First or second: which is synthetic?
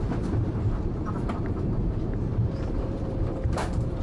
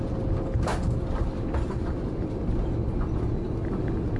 first